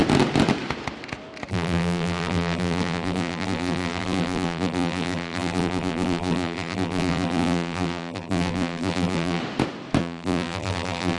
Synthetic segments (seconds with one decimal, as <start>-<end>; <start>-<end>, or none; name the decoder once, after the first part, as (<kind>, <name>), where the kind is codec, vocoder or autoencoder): 1.5-9.4 (vocoder, BigVGAN v2); 10.0-11.2

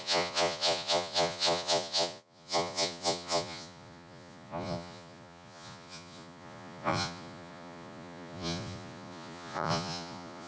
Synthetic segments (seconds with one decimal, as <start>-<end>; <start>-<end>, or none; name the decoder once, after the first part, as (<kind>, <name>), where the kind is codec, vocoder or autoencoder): 0.0-10.5 (vocoder, Vocos)

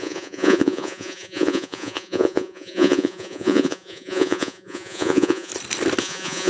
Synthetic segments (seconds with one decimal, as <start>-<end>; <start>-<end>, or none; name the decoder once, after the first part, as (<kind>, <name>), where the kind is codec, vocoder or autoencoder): 0.0-5.5 (vocoder, Vocos); 6.0-6.5

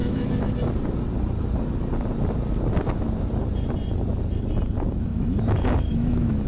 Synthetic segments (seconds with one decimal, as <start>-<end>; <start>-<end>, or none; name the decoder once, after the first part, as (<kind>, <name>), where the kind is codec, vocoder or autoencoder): 0.0-0.5 (autoencoder, DAC-VAE); 5.1-6.5

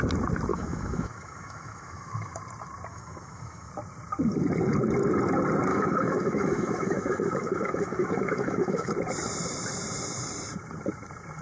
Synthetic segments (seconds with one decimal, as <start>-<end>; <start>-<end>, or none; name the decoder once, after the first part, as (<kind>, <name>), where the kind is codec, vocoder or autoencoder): 0.5-2.4 (autoencoder, DAC-VAE); 2.9-3.7; 5.7-8.9

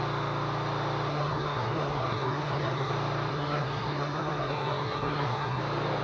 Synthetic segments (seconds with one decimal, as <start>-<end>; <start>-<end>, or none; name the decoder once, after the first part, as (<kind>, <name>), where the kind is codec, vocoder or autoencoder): 1.1-2.9 (codec, SNAC); 3.3-5.6